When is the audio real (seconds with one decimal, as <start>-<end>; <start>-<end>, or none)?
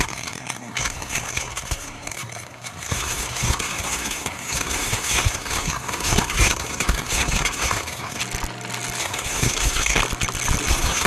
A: 8.2-9.0; 10.0-10.7